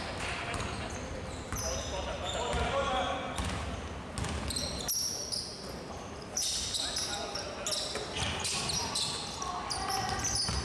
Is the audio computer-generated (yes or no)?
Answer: no